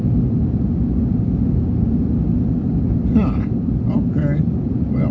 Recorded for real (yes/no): yes